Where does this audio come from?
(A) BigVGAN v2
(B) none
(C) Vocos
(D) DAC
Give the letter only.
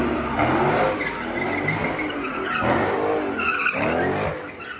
B